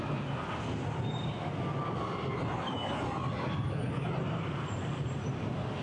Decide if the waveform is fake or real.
real